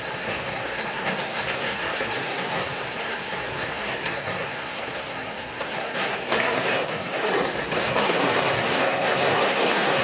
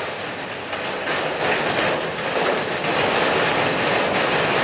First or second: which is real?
second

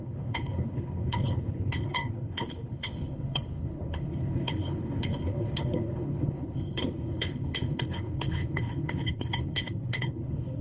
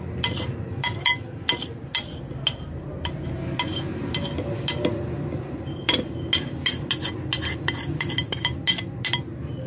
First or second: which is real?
second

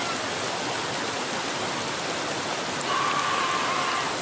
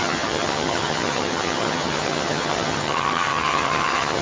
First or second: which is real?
first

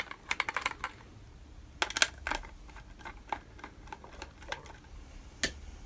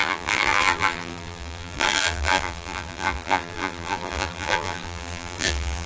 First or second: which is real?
first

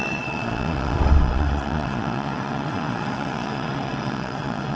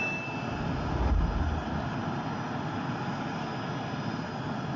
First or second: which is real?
second